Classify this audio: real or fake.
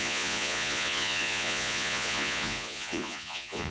fake